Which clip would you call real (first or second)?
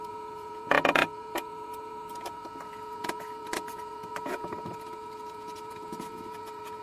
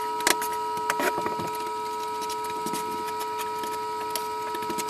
second